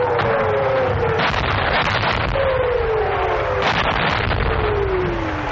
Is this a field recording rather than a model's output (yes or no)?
yes